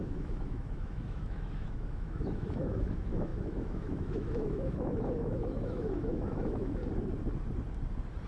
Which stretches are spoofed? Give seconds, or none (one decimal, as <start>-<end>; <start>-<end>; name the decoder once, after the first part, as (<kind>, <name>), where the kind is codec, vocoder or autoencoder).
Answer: 0.0-6.8 (autoencoder, DAC-VAE)